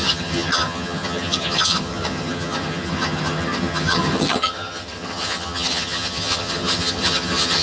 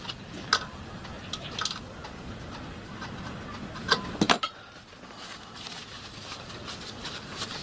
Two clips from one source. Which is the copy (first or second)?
first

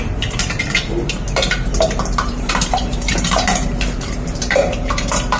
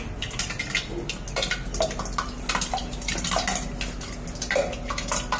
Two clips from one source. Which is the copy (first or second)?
first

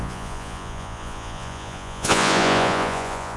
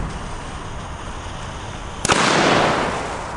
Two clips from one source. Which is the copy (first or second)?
first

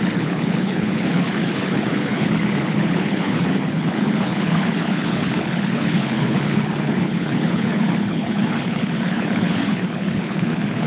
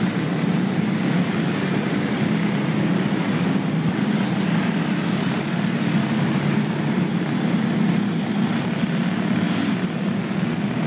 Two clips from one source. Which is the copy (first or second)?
first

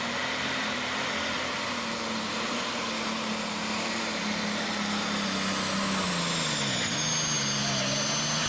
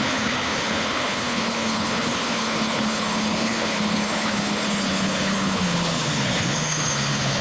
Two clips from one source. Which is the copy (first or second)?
second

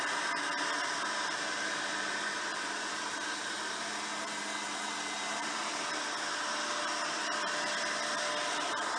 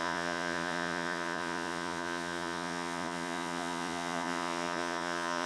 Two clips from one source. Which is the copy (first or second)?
second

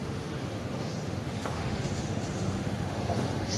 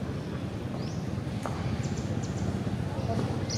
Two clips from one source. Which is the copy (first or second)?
first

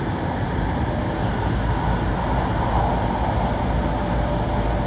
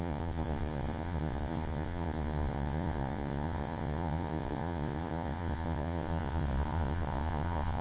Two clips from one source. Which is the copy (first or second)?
second